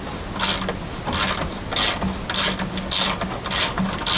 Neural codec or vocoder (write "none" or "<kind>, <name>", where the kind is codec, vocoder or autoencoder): none